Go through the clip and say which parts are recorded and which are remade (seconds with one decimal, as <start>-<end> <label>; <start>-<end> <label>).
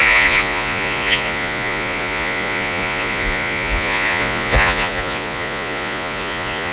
0.0-6.7 remade